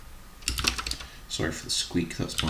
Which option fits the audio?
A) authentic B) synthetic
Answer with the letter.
A